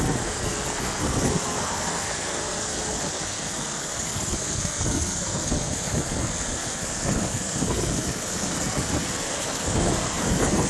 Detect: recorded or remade remade